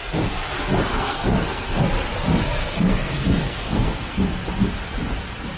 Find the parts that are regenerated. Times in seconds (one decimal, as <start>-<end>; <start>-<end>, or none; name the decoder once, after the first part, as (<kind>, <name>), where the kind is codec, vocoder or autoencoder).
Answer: 0.9-1.8 (codec, SNAC); 2.6-4.2